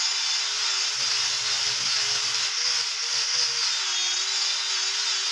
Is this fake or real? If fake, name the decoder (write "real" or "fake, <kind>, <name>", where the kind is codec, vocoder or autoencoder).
real